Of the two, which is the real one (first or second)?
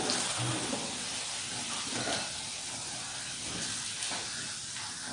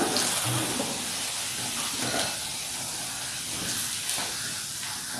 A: second